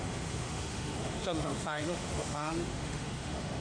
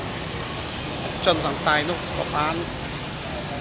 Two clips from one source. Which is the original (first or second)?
second